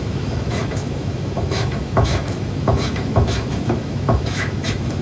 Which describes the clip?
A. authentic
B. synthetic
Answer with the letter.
B